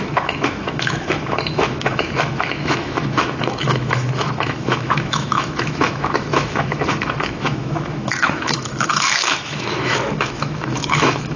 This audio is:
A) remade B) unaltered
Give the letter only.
A